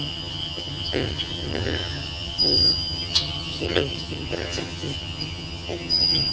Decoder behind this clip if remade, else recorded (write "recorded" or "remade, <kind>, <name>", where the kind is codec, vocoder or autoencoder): remade, vocoder, HiFi-GAN